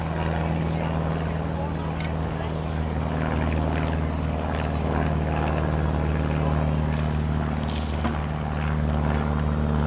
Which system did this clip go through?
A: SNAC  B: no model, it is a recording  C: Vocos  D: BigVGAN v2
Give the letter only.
B